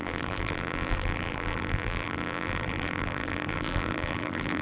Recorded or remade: remade